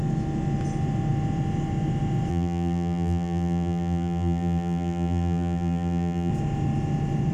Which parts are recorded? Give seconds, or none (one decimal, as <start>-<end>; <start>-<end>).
0.0-2.3; 6.3-7.3